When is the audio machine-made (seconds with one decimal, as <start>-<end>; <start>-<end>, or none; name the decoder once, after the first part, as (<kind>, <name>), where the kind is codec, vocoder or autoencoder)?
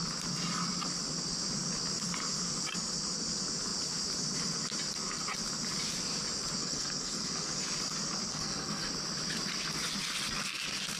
6.6-7.6 (codec, SNAC); 8.3-8.9